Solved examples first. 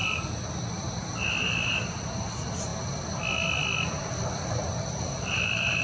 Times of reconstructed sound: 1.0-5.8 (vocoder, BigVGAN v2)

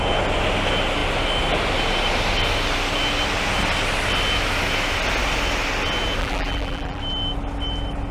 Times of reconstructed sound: 6.2-7.0 (vocoder, BigVGAN v2)